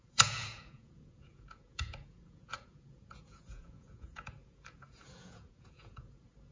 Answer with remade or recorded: remade